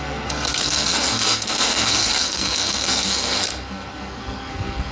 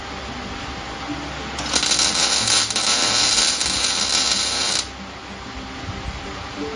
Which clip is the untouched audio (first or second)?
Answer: second